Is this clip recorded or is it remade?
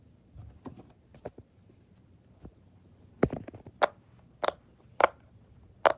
recorded